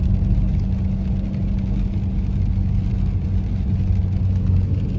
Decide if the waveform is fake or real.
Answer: real